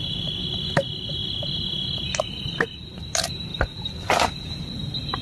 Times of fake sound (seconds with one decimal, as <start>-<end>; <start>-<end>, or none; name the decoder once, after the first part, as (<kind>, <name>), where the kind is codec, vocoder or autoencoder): none